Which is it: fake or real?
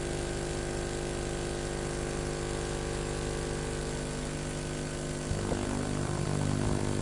real